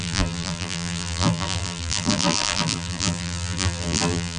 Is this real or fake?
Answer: fake